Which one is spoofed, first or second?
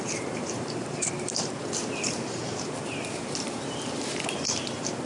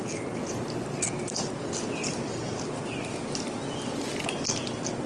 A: first